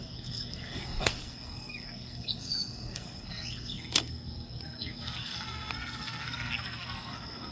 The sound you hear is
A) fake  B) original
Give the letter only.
A